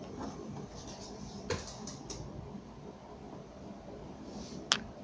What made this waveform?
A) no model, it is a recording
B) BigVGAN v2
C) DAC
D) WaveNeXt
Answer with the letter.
A